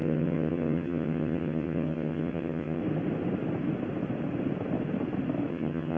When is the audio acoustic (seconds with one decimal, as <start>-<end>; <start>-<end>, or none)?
2.8-5.5